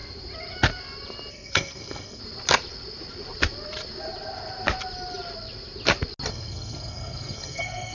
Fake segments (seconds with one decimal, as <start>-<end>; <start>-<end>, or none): 1.3-2.2; 6.3-7.9